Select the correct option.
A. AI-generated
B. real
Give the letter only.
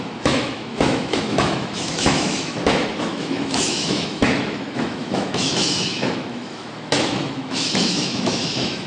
A